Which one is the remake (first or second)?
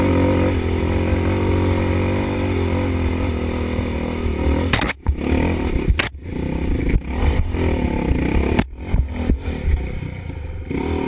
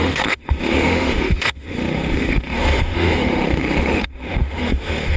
second